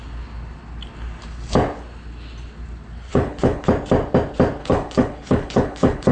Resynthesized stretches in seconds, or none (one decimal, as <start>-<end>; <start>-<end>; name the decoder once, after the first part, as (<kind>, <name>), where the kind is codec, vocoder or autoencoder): 3.1-3.7 (codec, HILCodec); 4.6-6.1